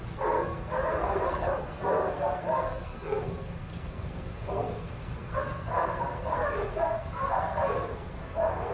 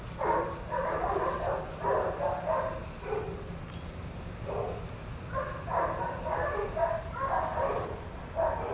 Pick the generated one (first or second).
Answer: first